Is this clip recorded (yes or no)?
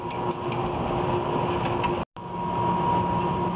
yes